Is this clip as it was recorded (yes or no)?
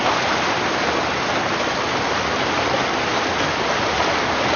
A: yes